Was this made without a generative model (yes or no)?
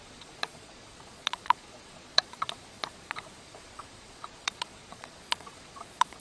no